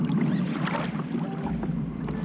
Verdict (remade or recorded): recorded